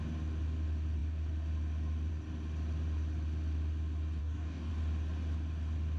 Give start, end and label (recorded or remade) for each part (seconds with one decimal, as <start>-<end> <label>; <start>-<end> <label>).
0.0-4.2 recorded; 4.2-4.7 remade; 4.7-6.0 recorded